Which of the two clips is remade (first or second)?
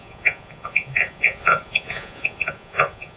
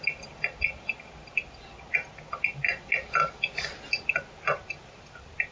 first